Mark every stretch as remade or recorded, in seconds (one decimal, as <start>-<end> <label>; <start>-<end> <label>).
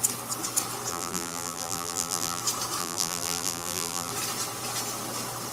0.0-0.9 recorded; 0.9-2.4 remade; 2.4-2.8 recorded; 2.8-4.1 remade; 4.1-5.5 recorded